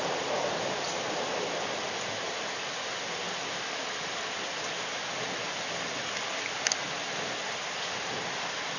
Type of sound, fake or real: real